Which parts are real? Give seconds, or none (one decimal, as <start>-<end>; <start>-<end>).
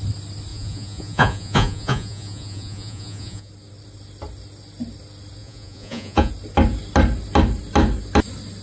0.0-0.5; 3.5-5.4; 6.3-8.6